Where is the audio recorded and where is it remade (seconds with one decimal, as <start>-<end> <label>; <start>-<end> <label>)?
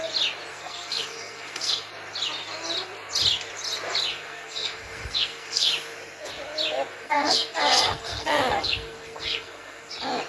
0.0-0.5 recorded; 0.5-1.9 remade; 1.9-4.1 recorded; 4.1-5.7 remade; 5.7-6.9 recorded; 6.9-9.9 remade; 9.9-10.3 recorded